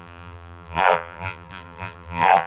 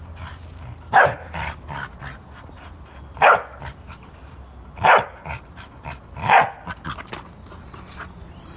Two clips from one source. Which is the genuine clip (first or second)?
second